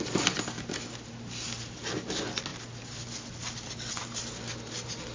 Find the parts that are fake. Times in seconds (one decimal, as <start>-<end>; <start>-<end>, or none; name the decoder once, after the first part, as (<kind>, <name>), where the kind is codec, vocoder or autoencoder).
none